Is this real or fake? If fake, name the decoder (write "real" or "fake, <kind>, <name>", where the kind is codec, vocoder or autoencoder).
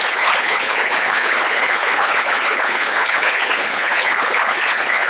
fake, codec, HILCodec